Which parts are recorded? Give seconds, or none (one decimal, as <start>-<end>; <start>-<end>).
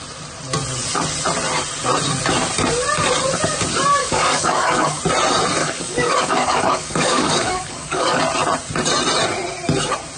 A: 0.0-4.0; 5.0-5.6; 8.2-10.2